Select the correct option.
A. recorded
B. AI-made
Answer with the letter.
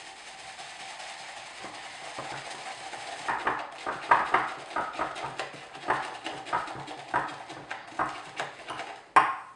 A